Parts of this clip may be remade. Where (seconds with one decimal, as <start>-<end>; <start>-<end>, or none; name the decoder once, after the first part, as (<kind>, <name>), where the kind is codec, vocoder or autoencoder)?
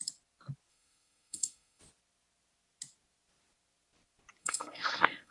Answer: 0.7-1.8 (codec, SNAC); 4.4-5.3